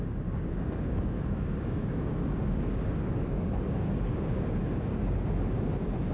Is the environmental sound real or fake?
fake